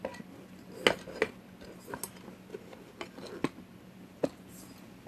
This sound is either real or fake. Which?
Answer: real